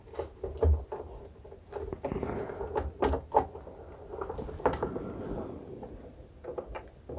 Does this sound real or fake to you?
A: real